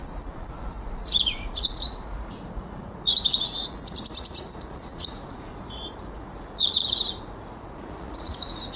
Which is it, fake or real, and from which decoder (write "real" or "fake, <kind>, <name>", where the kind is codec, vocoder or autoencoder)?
fake, vocoder, Vocos